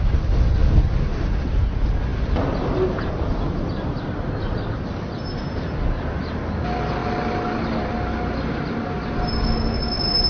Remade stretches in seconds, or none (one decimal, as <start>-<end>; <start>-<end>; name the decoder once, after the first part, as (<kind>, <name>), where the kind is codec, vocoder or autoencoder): none